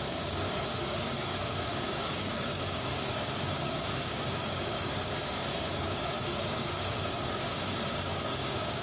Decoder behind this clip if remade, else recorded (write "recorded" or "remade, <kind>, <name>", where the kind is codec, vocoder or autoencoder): remade, codec, DAC